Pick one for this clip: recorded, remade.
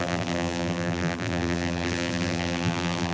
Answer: remade